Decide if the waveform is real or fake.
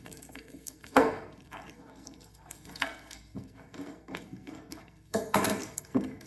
fake